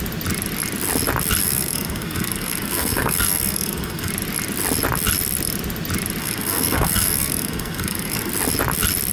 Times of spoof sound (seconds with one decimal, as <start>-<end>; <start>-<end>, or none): 1.4-4.1; 6.2-8.3